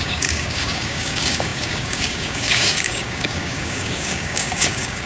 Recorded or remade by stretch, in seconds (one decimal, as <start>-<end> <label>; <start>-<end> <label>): 0.0-5.1 remade